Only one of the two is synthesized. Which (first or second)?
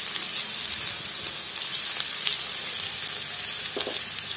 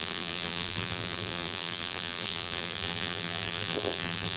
second